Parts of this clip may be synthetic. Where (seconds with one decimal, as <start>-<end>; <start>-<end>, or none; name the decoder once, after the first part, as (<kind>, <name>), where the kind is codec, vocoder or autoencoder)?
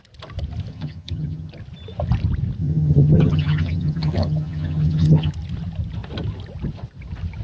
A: 0.7-1.5 (vocoder, HiFi-GAN); 2.6-5.3